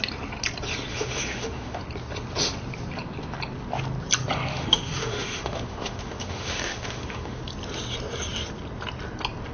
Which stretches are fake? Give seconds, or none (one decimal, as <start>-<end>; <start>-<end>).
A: 0.9-1.8; 4.5-7.4